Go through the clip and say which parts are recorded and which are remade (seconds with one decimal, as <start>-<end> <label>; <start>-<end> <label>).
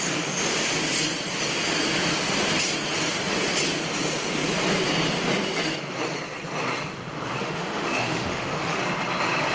0.0-7.4 recorded; 7.4-8.8 remade; 8.8-9.5 recorded